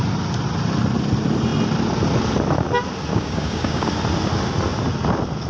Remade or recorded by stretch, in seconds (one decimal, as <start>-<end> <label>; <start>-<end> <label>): 0.0-3.1 recorded; 3.1-3.9 remade; 3.9-5.5 recorded